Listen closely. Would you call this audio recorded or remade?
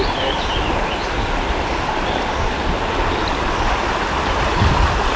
recorded